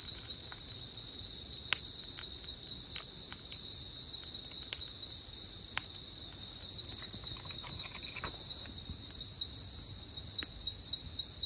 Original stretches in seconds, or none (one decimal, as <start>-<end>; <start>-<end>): 0.0-11.5